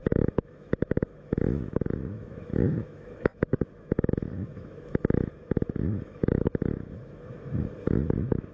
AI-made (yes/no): yes